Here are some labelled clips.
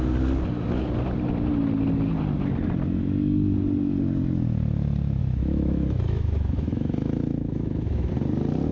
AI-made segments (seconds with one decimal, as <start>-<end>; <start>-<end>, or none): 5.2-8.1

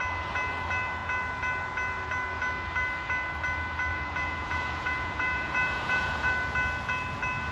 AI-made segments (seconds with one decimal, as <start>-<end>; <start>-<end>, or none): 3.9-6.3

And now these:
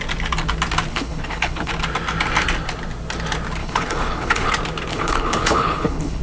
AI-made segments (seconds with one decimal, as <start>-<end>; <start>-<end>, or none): 0.9-1.7; 3.6-4.5; 4.9-6.2

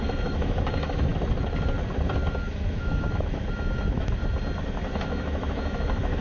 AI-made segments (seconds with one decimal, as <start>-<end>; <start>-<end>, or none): 0.0-1.1; 2.7-4.2; 4.7-6.2

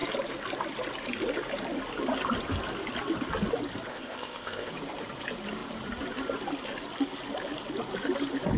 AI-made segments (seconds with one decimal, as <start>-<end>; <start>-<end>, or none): 3.9-4.7

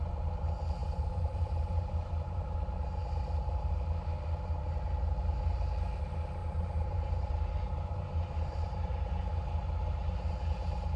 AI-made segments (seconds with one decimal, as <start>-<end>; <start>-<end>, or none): 0.8-2.4; 6.4-9.8

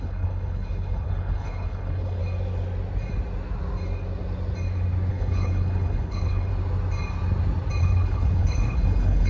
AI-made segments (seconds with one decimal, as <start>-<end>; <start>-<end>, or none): 0.0-2.2; 5.1-6.5; 7.8-9.3